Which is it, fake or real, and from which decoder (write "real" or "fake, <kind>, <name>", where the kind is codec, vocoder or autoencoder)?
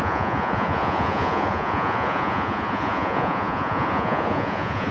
fake, vocoder, Vocos